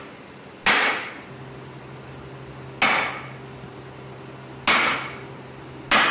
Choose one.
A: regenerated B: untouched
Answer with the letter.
B